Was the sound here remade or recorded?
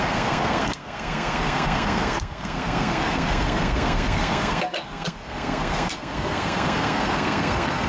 remade